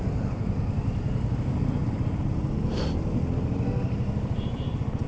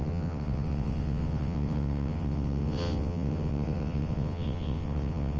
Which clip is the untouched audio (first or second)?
first